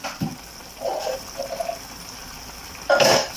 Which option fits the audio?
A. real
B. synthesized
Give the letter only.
A